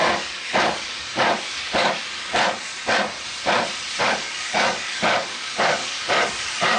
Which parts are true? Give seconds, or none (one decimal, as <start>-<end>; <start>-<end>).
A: 2.7-4.0

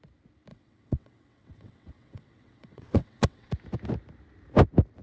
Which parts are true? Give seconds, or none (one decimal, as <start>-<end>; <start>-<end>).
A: 0.0-0.5; 3.5-5.0

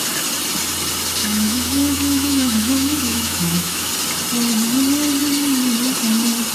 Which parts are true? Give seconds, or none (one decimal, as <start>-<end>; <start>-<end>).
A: 0.0-1.2; 3.9-6.5